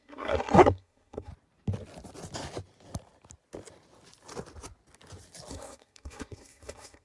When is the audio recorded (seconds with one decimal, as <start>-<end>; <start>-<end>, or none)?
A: 1.3-5.5